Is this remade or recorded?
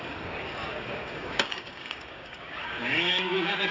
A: remade